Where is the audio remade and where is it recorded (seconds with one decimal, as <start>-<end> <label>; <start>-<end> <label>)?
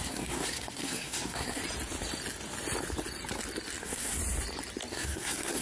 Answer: 0.0-1.6 remade; 1.6-3.8 recorded; 3.8-4.2 remade; 4.2-4.9 recorded; 4.9-5.6 remade